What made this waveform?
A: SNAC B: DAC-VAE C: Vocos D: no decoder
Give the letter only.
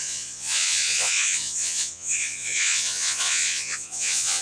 C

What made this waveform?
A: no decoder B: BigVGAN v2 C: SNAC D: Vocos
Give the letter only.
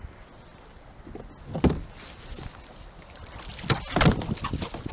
A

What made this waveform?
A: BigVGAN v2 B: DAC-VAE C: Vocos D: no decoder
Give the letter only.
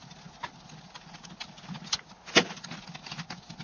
D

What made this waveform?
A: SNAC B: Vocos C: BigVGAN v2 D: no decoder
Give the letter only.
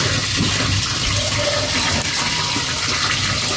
D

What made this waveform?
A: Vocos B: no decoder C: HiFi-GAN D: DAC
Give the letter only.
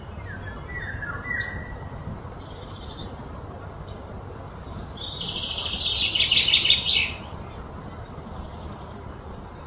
B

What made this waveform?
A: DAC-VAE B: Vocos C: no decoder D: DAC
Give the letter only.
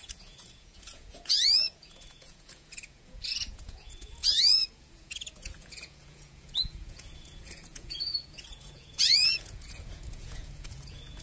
B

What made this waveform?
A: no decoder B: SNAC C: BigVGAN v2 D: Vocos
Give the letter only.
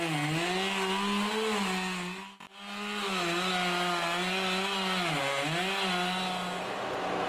A